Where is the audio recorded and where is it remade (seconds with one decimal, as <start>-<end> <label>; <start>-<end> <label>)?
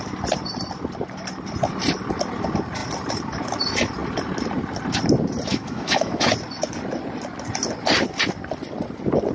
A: 0.0-5.5 recorded; 5.5-6.3 remade; 6.3-9.3 recorded